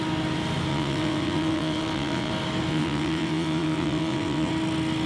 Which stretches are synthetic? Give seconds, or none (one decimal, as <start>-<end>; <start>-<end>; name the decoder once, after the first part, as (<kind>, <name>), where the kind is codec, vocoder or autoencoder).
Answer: 0.7-2.3 (vocoder, WaveNeXt); 2.7-4.5